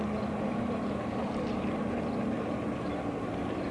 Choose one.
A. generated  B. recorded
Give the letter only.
B